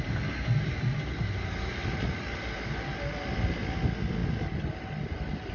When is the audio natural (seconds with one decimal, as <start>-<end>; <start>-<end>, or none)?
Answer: 0.0-5.5